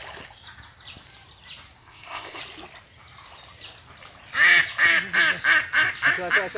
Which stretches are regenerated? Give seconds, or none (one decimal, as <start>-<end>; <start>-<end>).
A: 1.8-2.4

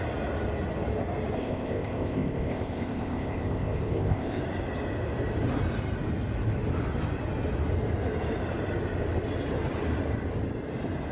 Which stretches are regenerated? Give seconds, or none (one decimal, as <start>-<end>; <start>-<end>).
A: 1.4-4.4

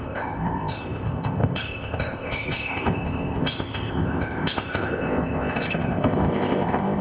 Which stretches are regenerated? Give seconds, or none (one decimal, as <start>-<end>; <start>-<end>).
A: 0.0-7.0

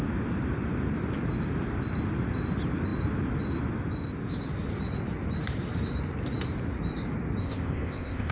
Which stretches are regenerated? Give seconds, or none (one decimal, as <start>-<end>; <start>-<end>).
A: 7.4-8.3

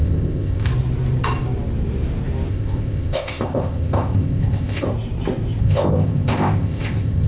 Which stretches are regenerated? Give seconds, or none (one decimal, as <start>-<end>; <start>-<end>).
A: 0.0-0.7; 2.5-4.9; 5.6-7.3

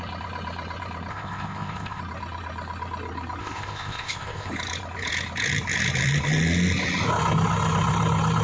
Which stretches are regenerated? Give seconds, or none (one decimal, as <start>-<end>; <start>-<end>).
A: 1.1-2.0; 3.4-4.5